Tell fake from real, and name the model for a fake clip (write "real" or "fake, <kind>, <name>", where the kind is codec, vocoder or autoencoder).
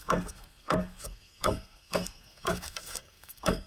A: fake, codec, SNAC